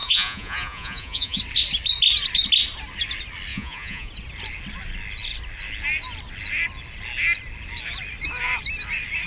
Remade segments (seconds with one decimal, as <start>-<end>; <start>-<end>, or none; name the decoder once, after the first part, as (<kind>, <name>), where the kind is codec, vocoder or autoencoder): 0.0-1.4 (vocoder, Vocos); 3.5-4.1